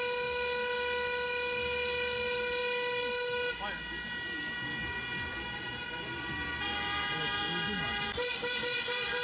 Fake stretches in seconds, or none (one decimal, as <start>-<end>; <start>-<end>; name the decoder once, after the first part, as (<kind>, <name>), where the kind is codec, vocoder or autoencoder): none